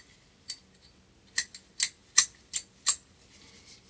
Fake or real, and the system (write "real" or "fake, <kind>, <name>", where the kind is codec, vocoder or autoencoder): real